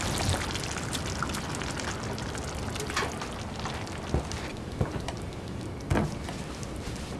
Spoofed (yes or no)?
no